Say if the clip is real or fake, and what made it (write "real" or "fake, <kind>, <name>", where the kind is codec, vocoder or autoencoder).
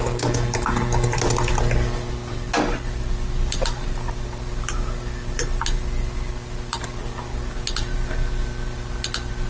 real